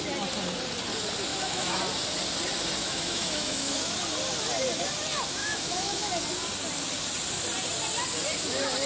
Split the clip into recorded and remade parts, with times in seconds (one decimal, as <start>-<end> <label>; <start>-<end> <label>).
0.0-1.3 recorded; 1.3-1.8 remade; 1.8-2.8 recorded; 2.8-4.0 remade; 4.0-5.4 recorded; 5.4-6.1 remade; 6.1-8.9 recorded